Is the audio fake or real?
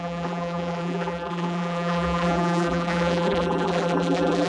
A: fake